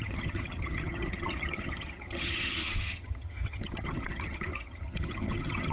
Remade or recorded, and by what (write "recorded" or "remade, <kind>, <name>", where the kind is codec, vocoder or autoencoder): remade, vocoder, HiFi-GAN